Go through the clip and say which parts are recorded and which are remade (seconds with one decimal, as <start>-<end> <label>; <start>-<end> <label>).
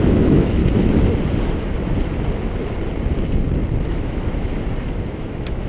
0.0-0.6 remade; 0.6-3.9 recorded; 3.9-4.5 remade; 4.5-5.1 recorded; 5.1-5.7 remade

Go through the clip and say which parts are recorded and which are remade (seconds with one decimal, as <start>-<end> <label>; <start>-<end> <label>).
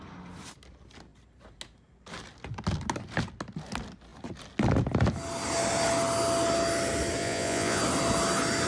0.0-7.2 recorded; 7.2-7.8 remade; 7.8-8.7 recorded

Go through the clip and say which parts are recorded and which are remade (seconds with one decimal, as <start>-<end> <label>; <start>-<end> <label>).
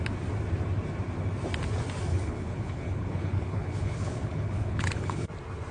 0.0-2.1 recorded; 2.1-5.3 remade; 5.3-5.7 recorded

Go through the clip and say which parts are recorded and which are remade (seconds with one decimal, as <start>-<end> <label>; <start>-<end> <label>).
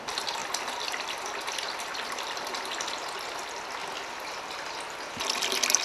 0.0-5.8 recorded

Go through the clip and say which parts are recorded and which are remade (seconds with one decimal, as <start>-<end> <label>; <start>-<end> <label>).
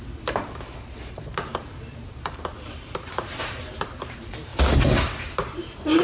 0.0-4.5 remade; 4.5-5.2 recorded; 5.2-6.0 remade